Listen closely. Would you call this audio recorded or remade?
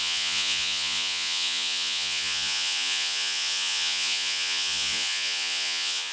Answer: remade